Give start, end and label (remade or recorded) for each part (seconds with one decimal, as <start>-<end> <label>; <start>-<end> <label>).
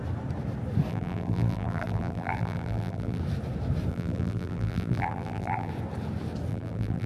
0.0-0.9 recorded; 0.9-3.2 remade; 3.2-3.9 recorded; 3.9-5.7 remade; 5.7-6.5 recorded; 6.5-7.1 remade